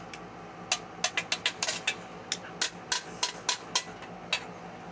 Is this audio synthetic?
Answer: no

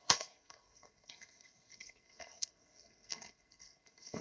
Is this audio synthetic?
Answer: yes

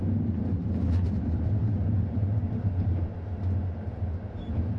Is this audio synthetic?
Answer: no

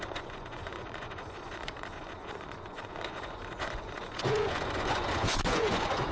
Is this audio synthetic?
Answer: yes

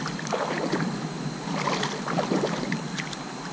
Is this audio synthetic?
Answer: no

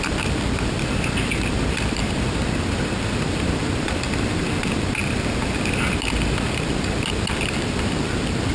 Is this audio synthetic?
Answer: no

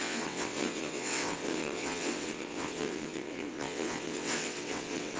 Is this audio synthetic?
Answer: yes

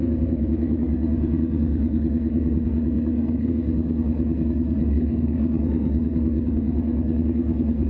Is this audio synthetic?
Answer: yes